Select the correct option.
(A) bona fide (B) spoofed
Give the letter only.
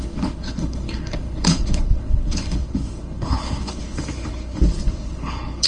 B